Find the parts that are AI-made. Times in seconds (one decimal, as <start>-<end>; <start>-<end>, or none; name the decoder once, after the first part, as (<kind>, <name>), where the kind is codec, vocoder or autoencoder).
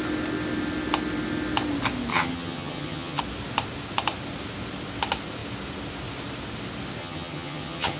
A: 2.1-3.2 (vocoder, HiFi-GAN); 7.0-8.0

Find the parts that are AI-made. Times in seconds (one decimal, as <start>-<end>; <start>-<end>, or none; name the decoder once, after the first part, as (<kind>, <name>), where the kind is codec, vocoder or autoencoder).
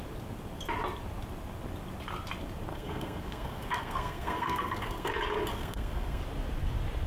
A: 2.7-5.1 (codec, SNAC); 5.5-6.2